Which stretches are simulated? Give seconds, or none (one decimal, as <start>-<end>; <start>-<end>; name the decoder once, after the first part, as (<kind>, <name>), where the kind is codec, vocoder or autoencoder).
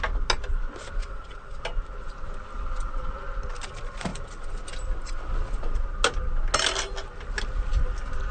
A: 1.0-1.6 (vocoder, WaveNeXt)